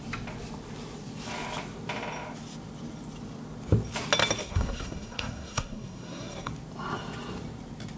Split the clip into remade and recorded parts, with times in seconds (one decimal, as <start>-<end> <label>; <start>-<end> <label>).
0.0-4.4 recorded; 4.4-6.5 remade; 6.5-8.0 recorded